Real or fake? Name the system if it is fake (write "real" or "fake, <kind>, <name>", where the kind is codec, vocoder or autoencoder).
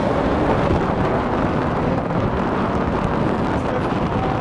real